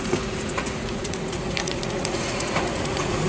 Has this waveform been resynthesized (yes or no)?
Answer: yes